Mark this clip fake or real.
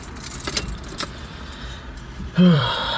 fake